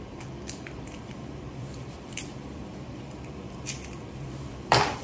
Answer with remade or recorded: remade